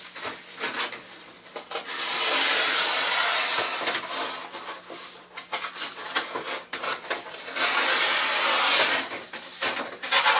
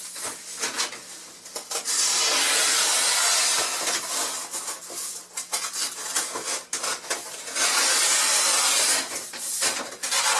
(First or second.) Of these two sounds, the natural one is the second